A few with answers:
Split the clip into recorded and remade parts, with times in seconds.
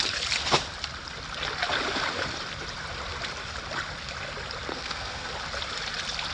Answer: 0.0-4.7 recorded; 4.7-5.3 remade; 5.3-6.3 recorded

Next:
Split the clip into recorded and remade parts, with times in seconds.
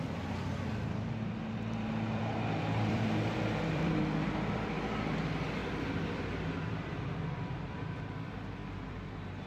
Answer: 0.0-2.2 recorded; 2.2-4.8 remade; 4.8-5.6 recorded; 5.6-8.1 remade; 8.1-9.5 recorded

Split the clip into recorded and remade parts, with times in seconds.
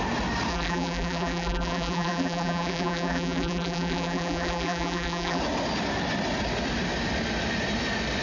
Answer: 0.0-0.5 recorded; 0.5-5.4 remade; 5.4-8.2 recorded